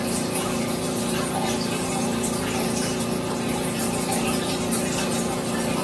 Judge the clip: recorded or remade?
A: recorded